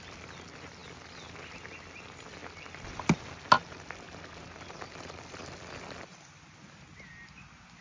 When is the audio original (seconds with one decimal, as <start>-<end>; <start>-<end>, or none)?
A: 0.0-7.8